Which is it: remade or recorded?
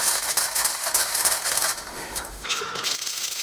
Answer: remade